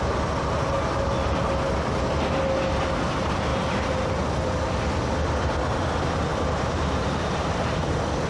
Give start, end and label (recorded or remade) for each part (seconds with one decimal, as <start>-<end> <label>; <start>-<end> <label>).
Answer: 0.0-3.5 recorded; 3.5-4.1 remade; 4.1-6.3 recorded; 6.3-7.8 remade; 7.8-8.3 recorded